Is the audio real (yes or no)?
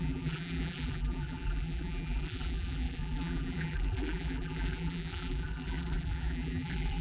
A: no